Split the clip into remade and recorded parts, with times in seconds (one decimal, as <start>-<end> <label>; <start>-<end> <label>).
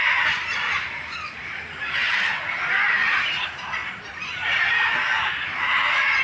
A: 0.0-6.2 recorded